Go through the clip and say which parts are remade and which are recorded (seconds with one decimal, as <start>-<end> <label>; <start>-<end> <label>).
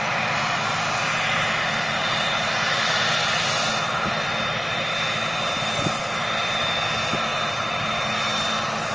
0.0-8.9 recorded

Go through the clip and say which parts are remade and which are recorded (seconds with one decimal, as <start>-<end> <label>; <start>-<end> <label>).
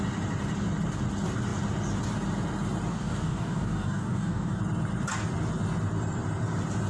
0.0-2.9 recorded; 2.9-4.6 remade; 4.6-6.9 recorded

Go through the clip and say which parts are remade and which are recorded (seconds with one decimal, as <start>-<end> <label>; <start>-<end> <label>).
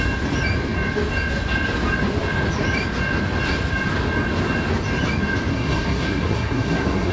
0.0-5.5 recorded; 5.5-7.1 remade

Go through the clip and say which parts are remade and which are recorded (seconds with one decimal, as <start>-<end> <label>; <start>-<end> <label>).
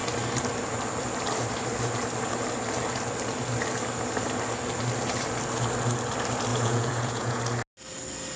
0.0-6.5 recorded; 6.5-7.4 remade; 7.4-8.4 recorded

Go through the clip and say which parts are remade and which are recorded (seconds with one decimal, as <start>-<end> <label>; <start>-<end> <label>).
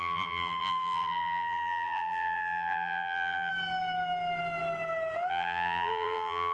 0.0-3.5 remade; 3.5-5.3 recorded; 5.3-6.5 remade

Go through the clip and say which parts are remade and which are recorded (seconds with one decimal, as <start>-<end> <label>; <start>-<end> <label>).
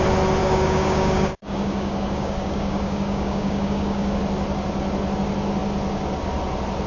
0.0-0.4 recorded; 0.4-4.2 remade; 4.2-6.9 recorded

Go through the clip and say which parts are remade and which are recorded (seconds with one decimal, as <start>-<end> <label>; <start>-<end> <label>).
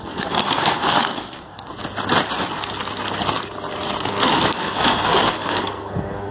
0.0-1.7 remade; 1.7-4.0 recorded; 4.0-6.3 remade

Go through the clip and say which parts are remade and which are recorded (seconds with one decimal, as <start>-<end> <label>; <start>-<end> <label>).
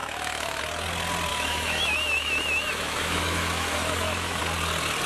0.0-0.6 remade; 0.6-1.3 recorded; 1.3-4.4 remade; 4.4-5.1 recorded